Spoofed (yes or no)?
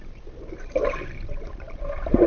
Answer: no